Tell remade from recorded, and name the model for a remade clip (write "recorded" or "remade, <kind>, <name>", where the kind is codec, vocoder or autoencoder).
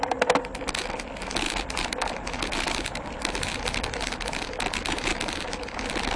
recorded